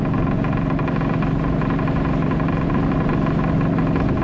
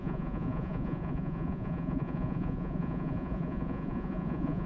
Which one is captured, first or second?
first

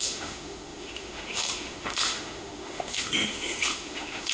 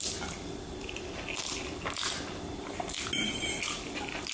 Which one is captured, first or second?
second